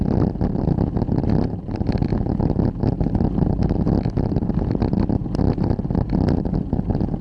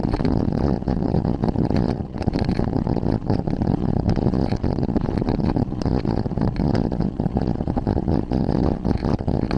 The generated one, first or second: second